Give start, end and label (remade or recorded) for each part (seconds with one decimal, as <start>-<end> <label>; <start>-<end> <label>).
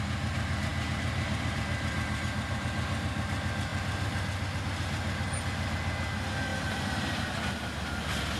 0.0-6.5 recorded; 6.5-7.2 remade; 7.2-8.4 recorded